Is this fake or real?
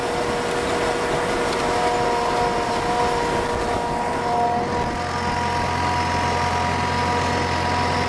real